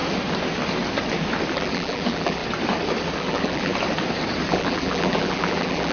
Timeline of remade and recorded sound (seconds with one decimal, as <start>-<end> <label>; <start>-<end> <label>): 0.0-1.5 recorded; 1.5-2.4 remade; 2.4-3.2 recorded; 3.2-3.7 remade; 3.7-4.5 recorded; 4.5-5.9 remade